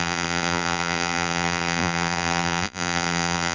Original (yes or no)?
no